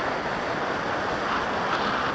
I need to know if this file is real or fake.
real